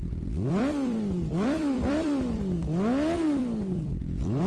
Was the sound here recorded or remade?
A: remade